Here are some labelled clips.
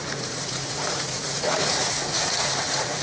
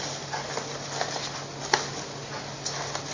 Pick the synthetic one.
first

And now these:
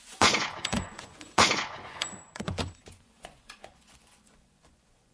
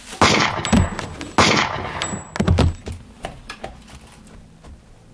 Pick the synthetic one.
first